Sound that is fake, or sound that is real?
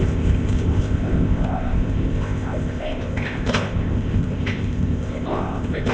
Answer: fake